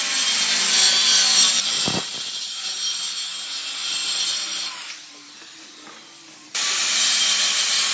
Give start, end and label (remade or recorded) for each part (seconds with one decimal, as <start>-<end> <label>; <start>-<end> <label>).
0.0-3.3 remade; 3.3-3.8 recorded; 3.8-7.9 remade